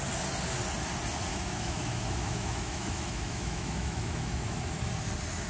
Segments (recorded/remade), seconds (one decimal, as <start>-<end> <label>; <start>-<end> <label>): 0.0-1.3 recorded; 1.3-4.6 remade; 4.6-5.5 recorded